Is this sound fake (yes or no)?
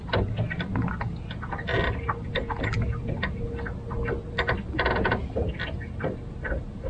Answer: no